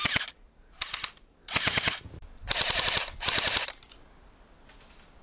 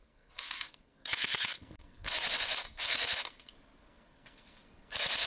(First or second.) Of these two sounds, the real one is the first